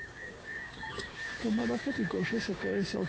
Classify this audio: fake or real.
fake